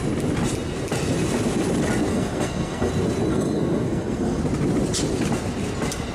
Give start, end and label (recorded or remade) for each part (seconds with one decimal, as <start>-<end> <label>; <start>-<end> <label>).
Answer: 0.0-2.1 recorded; 2.1-2.9 remade; 2.9-3.3 recorded; 3.3-4.4 remade; 4.4-6.1 recorded